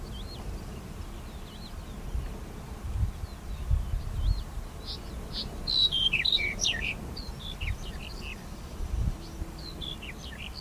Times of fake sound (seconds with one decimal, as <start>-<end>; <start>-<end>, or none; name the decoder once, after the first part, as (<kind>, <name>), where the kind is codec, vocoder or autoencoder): 5.8-6.9 (vocoder, BigVGAN v2); 8.3-9.4